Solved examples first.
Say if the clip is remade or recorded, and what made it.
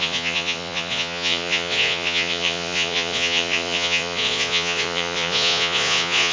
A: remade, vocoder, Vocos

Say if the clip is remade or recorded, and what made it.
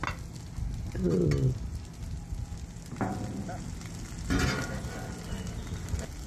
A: recorded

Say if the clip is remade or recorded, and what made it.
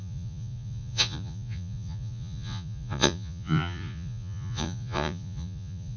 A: remade, vocoder, Vocos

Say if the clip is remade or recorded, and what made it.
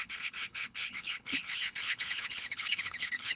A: remade, codec, HILCodec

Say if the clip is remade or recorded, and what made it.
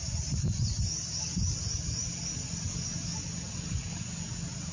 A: recorded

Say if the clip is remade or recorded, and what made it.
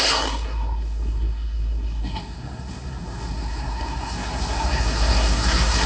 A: remade, codec, SNAC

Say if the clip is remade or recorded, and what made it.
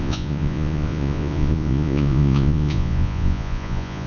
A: remade, vocoder, Vocos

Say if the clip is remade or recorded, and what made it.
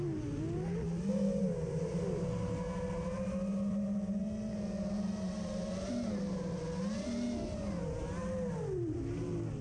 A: recorded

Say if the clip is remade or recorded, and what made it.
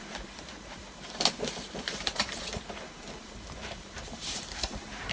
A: remade, vocoder, BigVGAN v2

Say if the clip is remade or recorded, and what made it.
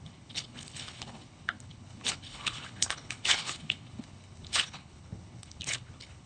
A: remade, codec, HILCodec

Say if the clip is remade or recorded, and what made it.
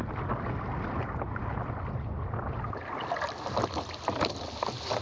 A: recorded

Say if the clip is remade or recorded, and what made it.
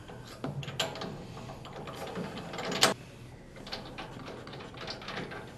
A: recorded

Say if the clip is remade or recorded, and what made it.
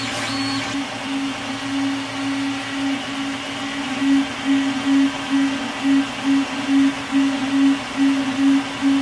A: recorded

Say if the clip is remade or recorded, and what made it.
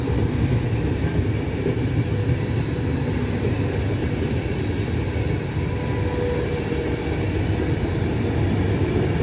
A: recorded